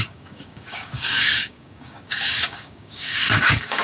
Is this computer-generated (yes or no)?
yes